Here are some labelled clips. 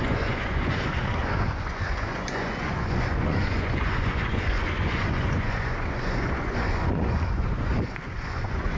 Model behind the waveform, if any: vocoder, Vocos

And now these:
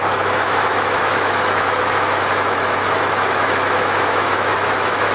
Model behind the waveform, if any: autoencoder, DAC-VAE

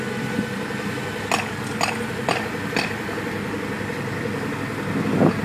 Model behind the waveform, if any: none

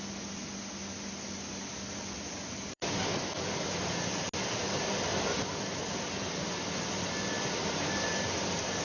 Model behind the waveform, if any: none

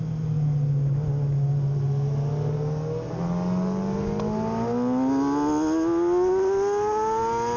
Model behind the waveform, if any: none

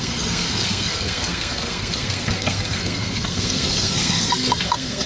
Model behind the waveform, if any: codec, SNAC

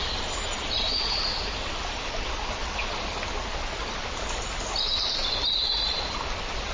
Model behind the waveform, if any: none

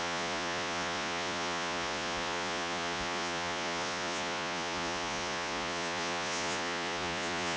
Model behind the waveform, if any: vocoder, Vocos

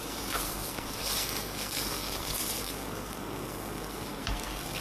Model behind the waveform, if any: codec, SNAC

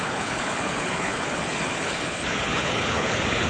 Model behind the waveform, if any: codec, HILCodec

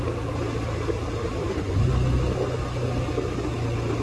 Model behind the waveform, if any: none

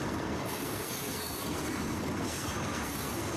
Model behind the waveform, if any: codec, SNAC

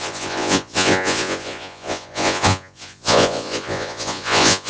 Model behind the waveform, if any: vocoder, Vocos